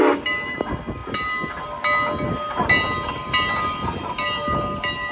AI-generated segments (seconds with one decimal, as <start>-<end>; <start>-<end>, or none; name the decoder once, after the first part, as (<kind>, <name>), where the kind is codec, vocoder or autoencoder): none